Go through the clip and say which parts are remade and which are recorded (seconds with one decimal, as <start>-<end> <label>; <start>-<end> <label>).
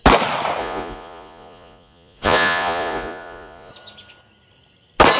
0.0-0.6 recorded; 0.6-3.7 remade; 3.7-5.2 recorded